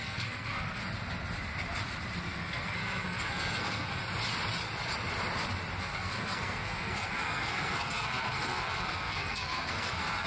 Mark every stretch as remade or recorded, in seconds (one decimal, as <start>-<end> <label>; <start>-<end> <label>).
0.0-0.8 remade; 0.8-2.2 recorded; 2.2-4.0 remade; 4.0-5.8 recorded; 5.8-10.3 remade